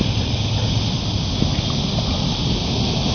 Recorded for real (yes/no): yes